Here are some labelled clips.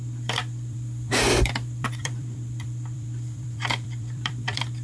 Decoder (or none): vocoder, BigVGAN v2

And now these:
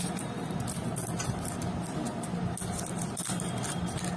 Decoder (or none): none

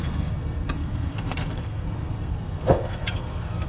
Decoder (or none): codec, SNAC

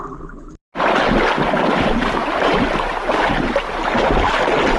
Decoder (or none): none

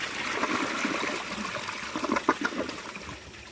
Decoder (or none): none